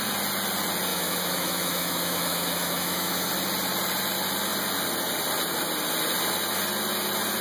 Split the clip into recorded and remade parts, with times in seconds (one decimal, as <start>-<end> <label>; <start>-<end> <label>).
0.0-0.9 recorded; 0.9-3.3 remade; 3.3-7.4 recorded